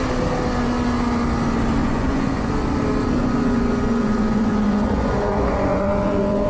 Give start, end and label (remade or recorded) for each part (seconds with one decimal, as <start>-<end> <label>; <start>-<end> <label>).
0.0-1.8 recorded; 1.8-2.5 remade; 2.5-3.2 recorded; 3.2-6.5 remade